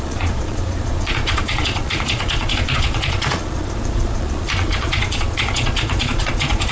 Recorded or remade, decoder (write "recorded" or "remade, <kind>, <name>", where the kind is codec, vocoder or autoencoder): remade, vocoder, Vocos